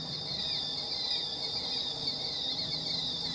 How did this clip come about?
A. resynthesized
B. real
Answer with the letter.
B